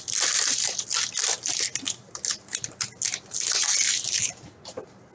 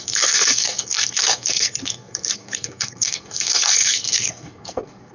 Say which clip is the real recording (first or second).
first